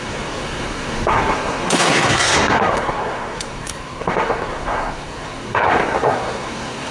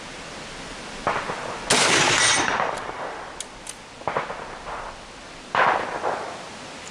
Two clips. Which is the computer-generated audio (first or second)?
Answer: first